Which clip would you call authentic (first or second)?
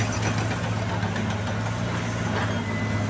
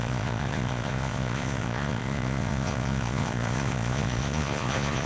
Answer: first